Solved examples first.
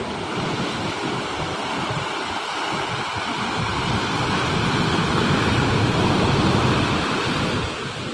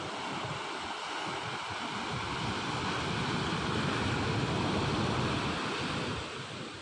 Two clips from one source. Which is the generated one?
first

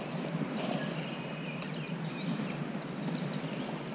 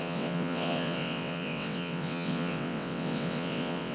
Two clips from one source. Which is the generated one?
second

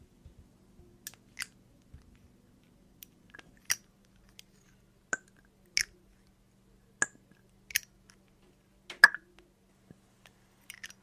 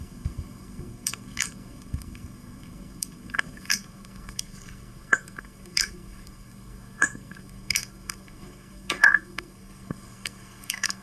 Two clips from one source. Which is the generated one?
second